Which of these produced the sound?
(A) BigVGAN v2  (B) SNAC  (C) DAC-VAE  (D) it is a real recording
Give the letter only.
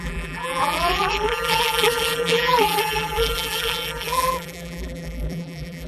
A